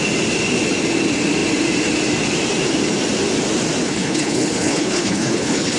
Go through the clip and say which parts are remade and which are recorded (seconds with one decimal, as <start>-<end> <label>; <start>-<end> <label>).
0.0-3.8 recorded; 3.8-5.8 remade